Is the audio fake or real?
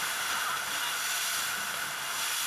real